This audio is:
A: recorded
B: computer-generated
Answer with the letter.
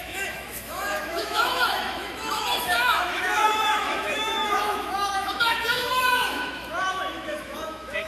B